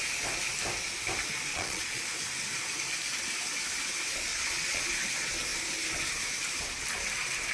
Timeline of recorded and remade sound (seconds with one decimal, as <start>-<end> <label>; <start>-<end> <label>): 0.0-1.5 recorded; 1.5-2.0 remade; 2.0-4.3 recorded; 4.3-4.8 remade; 4.8-7.5 recorded